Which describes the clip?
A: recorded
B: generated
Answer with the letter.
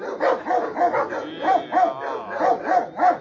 A